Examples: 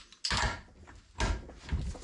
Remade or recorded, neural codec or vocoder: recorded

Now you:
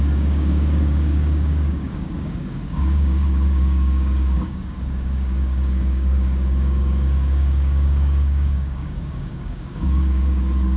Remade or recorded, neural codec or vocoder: remade, codec, DAC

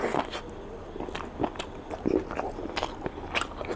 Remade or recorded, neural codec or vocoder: recorded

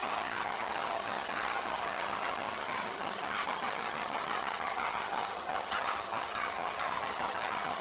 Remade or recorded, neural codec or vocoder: remade, vocoder, HiFi-GAN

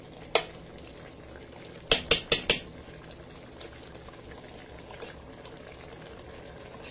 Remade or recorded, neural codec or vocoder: recorded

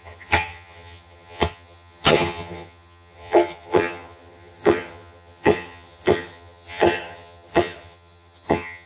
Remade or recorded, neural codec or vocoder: remade, vocoder, HiFi-GAN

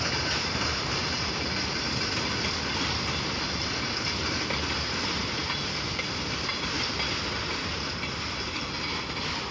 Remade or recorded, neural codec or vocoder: recorded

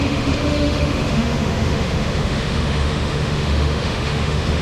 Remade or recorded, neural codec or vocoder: remade, autoencoder, DAC-VAE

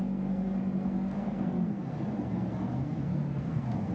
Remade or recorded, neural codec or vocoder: remade, codec, SNAC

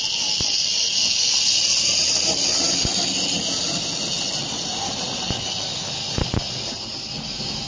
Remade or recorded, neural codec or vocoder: recorded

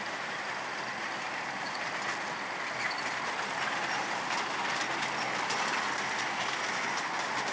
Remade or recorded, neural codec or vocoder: remade, vocoder, BigVGAN v2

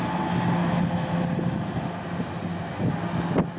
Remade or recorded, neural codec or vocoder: recorded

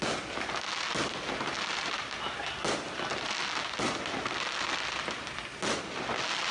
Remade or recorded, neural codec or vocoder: recorded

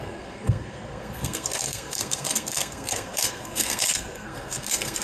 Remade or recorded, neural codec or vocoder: remade, codec, SNAC